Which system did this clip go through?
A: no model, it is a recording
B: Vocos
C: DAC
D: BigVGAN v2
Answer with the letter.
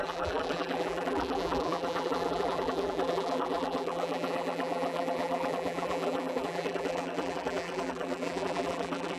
D